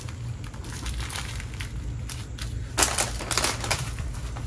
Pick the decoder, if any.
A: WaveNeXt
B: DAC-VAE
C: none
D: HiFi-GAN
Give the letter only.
C